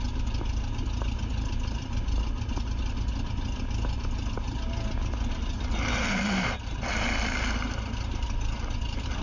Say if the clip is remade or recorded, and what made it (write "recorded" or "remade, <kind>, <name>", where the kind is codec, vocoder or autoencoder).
recorded